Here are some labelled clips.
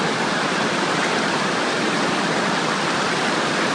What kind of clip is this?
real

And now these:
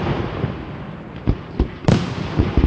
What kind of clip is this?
real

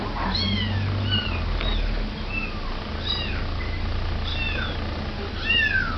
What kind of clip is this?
real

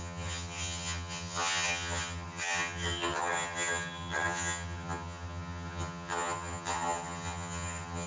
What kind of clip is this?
fake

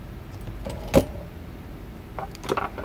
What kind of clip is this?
real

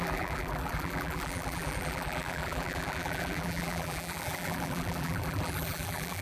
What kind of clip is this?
fake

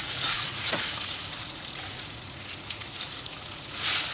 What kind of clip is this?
fake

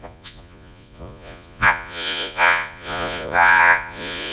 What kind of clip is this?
fake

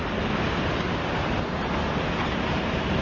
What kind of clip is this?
real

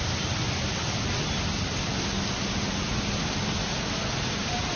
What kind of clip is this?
real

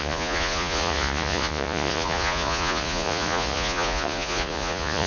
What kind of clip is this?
fake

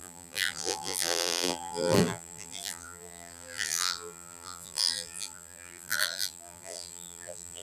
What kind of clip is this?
fake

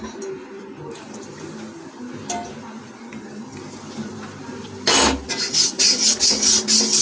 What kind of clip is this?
real